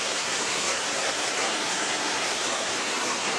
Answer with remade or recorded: remade